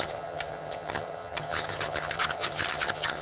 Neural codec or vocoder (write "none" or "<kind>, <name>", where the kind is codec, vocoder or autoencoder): vocoder, HiFi-GAN